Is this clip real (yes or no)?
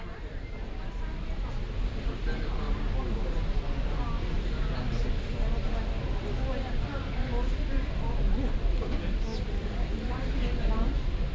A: yes